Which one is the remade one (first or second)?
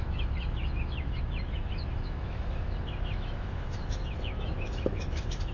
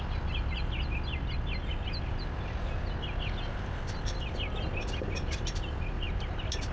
first